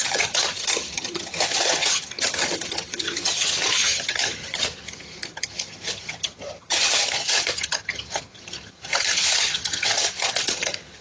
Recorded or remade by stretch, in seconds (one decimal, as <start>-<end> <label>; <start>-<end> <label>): 0.0-11.0 remade